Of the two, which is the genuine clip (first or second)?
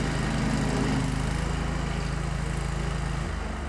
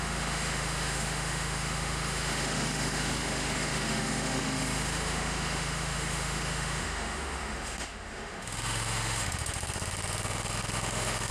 first